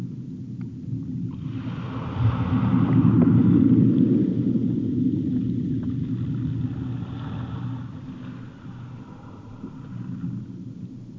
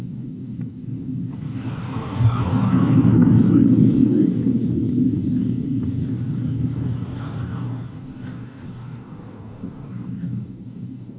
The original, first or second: first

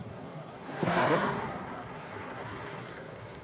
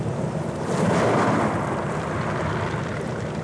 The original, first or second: second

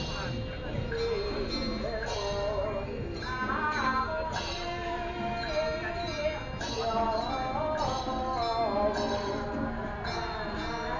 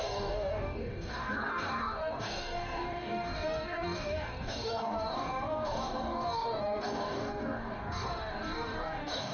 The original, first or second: first